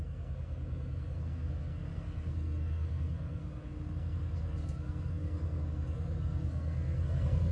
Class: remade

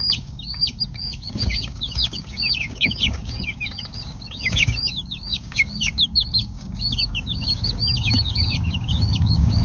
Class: remade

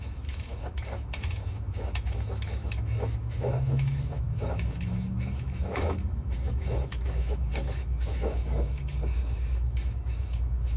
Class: remade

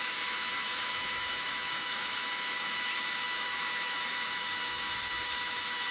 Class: remade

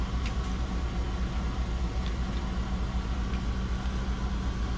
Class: recorded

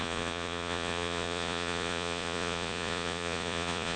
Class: remade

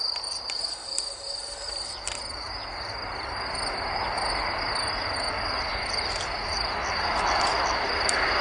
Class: recorded